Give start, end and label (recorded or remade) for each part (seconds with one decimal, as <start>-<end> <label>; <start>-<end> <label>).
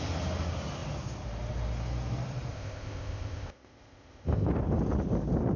0.0-2.5 recorded; 2.5-4.5 remade; 4.5-5.6 recorded